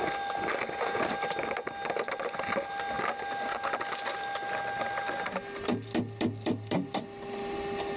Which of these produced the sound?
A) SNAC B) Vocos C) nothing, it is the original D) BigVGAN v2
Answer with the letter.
C